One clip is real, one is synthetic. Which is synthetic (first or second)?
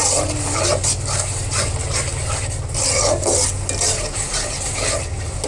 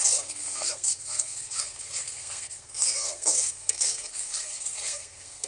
second